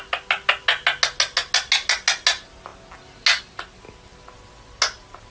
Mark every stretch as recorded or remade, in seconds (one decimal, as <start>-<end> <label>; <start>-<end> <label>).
0.0-5.3 recorded